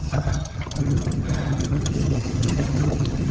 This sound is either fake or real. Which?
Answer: fake